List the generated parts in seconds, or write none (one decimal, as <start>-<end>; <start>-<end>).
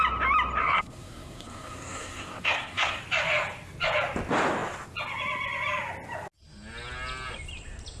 0.6-3.0